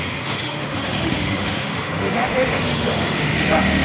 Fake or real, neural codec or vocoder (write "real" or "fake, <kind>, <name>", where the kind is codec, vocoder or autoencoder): fake, autoencoder, DAC-VAE